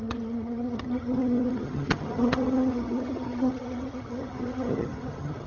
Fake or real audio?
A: fake